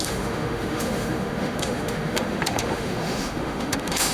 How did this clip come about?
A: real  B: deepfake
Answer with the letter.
B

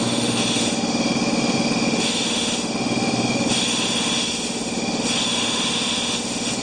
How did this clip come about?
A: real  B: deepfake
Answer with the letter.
B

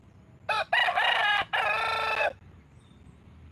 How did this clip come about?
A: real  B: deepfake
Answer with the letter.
A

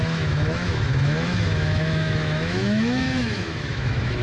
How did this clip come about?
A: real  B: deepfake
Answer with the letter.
B